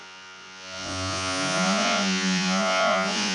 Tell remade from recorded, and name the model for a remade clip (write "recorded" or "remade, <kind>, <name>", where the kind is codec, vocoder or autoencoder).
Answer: remade, vocoder, Vocos